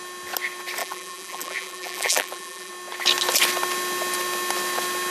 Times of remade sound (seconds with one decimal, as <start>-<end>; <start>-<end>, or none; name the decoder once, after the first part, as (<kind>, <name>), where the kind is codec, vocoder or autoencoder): 0.8-2.7 (vocoder, BigVGAN v2)